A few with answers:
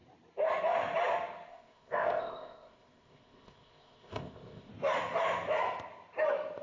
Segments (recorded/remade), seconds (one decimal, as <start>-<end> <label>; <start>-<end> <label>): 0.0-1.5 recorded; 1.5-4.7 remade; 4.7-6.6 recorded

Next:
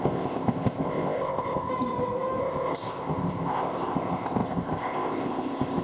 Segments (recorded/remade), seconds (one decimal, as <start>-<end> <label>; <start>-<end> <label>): 0.0-1.7 remade; 1.7-2.4 recorded; 2.4-5.8 remade

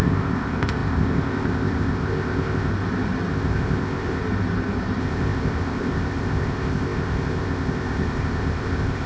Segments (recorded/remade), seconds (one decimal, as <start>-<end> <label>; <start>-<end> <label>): 0.0-2.7 remade; 2.7-3.3 recorded; 3.3-4.2 remade; 4.2-5.0 recorded; 5.0-9.1 remade

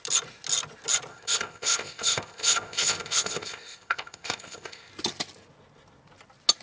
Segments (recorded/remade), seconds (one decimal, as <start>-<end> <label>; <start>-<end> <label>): 0.0-1.1 recorded; 1.1-4.9 remade; 4.9-6.6 recorded

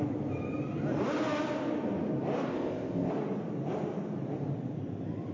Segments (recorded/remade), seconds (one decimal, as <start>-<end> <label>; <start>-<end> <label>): 0.0-2.5 recorded; 2.5-3.1 remade; 3.1-5.3 recorded

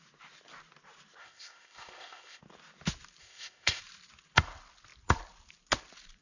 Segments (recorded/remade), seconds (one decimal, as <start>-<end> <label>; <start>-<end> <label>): 0.0-1.2 recorded; 1.2-2.4 remade; 2.4-3.2 recorded; 3.2-3.8 remade; 3.8-6.2 recorded